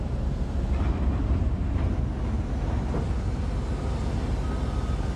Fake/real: real